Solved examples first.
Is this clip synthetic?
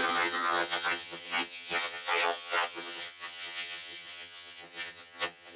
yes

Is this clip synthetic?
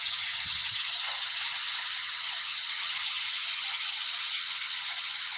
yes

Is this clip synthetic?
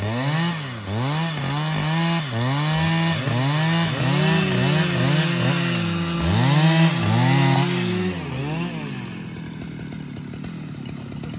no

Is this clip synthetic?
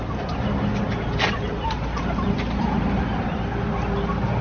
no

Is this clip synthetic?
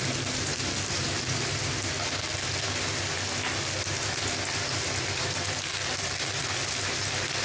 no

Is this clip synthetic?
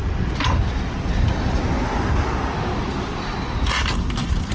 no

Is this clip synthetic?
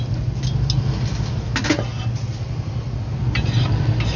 no